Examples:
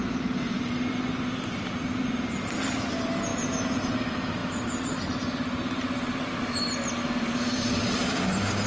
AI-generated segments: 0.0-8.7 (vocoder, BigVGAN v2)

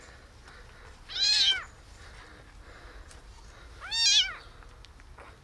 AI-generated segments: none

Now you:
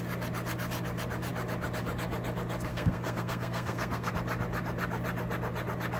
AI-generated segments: 2.7-4.1 (codec, SNAC)